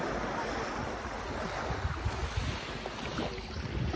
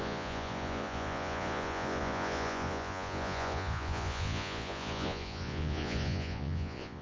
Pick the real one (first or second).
first